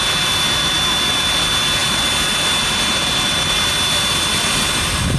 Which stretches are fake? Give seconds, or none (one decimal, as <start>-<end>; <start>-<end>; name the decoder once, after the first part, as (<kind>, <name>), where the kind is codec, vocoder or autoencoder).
none